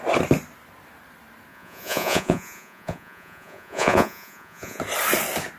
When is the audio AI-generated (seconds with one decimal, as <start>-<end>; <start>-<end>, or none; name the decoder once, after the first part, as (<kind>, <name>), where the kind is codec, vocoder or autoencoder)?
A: 1.5-4.8 (vocoder, Vocos)